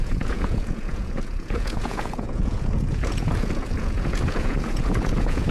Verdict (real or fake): fake